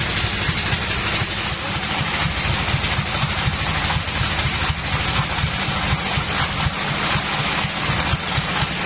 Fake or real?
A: real